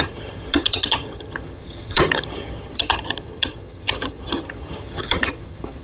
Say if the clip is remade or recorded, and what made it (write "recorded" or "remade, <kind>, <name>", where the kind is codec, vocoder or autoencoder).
remade, vocoder, HiFi-GAN